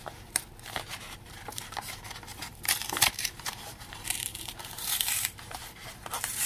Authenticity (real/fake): fake